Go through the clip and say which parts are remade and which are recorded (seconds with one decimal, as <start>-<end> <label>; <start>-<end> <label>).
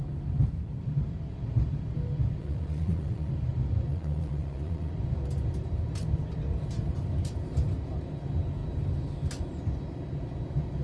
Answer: 0.0-2.4 recorded; 2.4-3.3 remade; 3.3-3.9 recorded; 3.9-4.9 remade; 4.9-10.8 recorded